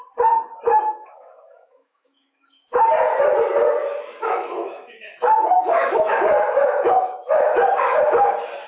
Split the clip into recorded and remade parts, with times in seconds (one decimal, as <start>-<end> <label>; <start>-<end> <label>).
0.0-0.7 recorded; 0.7-2.8 remade; 2.8-3.8 recorded; 3.8-8.0 remade; 8.0-8.7 recorded